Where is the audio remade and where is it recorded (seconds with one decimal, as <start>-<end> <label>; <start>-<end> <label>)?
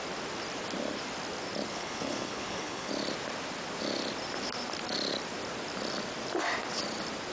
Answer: 0.0-1.7 recorded; 1.7-2.9 remade; 2.9-7.3 recorded